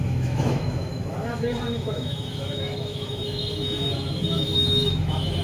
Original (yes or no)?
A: no